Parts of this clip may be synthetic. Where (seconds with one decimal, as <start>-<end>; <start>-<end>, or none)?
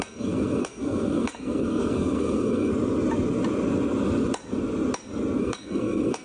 0.0-2.7; 5.4-6.2